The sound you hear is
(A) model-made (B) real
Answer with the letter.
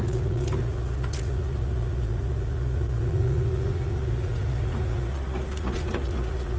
A